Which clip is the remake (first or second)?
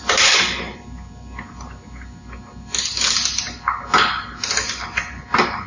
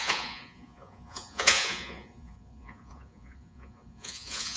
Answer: second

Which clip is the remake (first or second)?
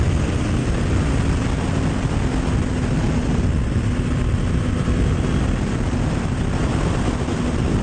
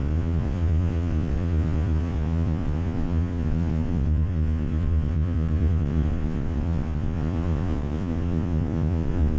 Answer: second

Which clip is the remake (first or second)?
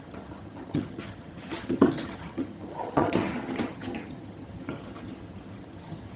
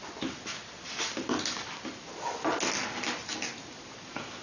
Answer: first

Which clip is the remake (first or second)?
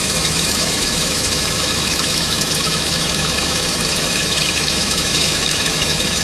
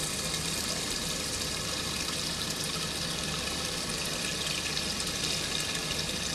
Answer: first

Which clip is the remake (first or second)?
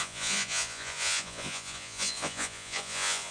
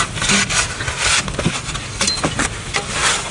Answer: first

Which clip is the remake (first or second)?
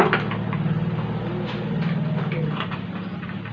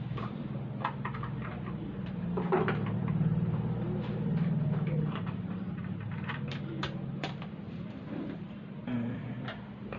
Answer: second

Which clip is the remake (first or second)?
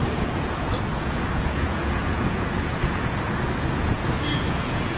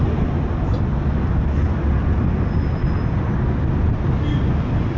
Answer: first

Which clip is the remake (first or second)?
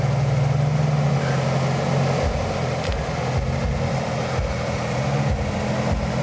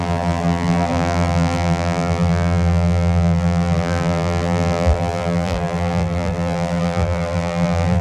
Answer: second